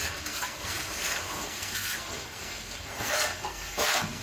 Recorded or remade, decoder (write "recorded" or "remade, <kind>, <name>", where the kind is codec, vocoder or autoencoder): remade, codec, SNAC